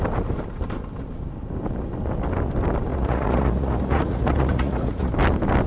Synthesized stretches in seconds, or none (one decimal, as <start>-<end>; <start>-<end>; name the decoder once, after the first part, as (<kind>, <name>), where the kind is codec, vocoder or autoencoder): 2.9-5.1 (vocoder, Vocos)